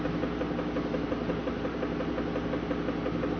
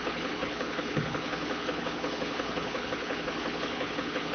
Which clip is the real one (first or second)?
first